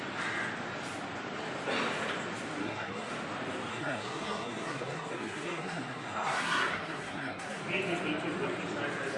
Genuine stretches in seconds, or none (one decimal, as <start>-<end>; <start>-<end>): 0.0-2.6; 3.1-3.7; 7.6-9.2